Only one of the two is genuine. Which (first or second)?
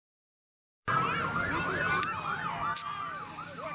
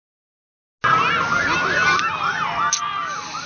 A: second